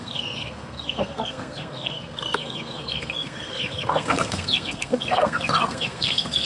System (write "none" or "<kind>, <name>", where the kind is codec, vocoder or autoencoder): codec, SNAC